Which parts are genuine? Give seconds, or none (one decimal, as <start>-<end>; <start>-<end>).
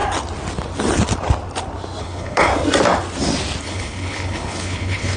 0.0-2.0; 2.5-3.6